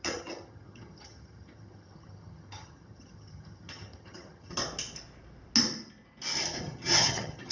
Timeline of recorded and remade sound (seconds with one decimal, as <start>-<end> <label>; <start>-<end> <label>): 0.0-4.6 remade; 4.6-6.6 recorded; 6.6-7.5 remade